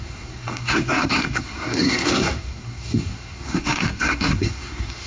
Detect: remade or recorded remade